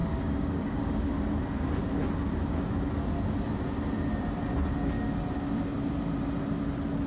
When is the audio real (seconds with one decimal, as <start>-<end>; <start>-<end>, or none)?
1.1-7.1